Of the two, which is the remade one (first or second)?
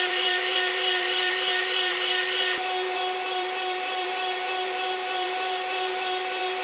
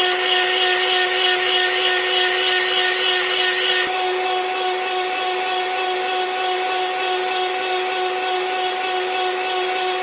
first